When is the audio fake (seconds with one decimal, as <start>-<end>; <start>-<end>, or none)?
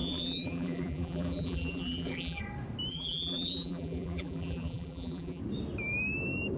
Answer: 0.0-2.4; 2.9-5.4